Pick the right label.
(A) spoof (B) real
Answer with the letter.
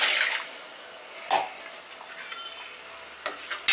B